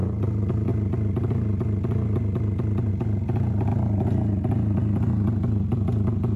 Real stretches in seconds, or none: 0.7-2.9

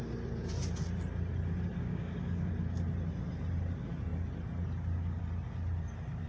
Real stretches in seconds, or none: 0.0-1.8; 2.5-6.3